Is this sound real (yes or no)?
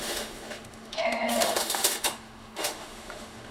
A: no